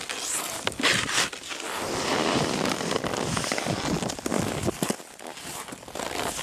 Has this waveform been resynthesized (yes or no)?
no